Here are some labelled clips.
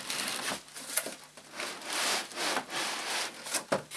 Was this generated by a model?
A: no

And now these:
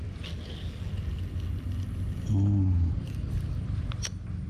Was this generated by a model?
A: no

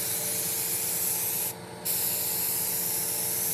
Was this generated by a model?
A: no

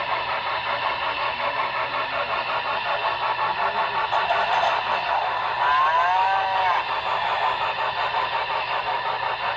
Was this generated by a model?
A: no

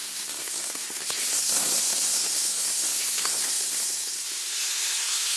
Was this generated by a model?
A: yes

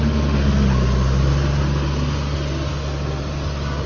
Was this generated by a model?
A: no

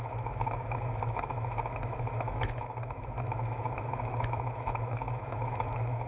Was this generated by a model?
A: yes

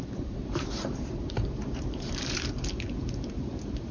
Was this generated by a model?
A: yes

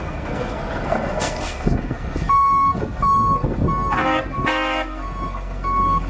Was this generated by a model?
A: yes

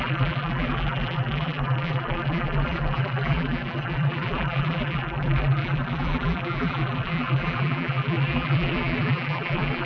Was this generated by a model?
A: yes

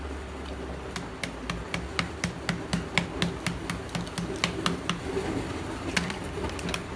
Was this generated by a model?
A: no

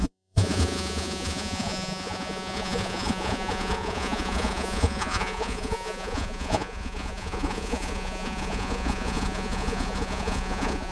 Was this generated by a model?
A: yes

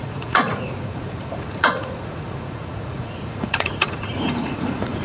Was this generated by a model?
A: yes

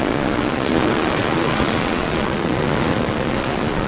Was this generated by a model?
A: yes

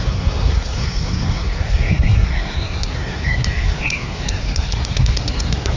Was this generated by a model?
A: yes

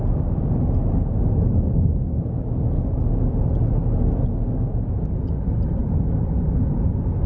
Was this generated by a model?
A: no